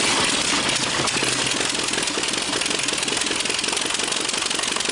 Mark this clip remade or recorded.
recorded